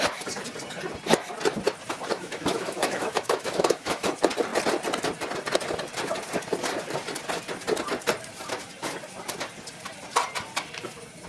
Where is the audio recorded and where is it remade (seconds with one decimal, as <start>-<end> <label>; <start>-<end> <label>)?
0.0-2.1 recorded; 2.1-4.1 remade; 4.1-11.3 recorded